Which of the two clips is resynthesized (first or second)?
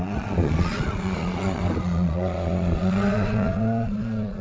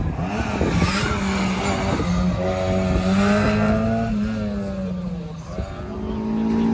first